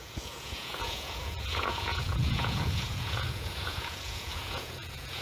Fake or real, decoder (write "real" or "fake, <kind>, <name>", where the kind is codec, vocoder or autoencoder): fake, vocoder, Vocos